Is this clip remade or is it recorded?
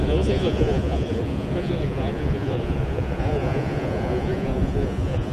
remade